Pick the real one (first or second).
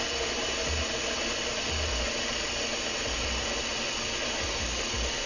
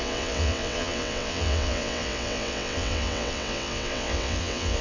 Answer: first